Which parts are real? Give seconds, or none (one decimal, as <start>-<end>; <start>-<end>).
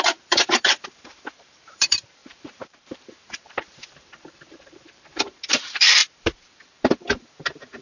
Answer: none